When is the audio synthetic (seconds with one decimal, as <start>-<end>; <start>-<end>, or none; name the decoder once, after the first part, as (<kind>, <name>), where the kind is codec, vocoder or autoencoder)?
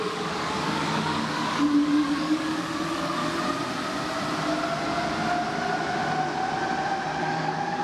0.0-3.2 (codec, DAC); 7.2-7.8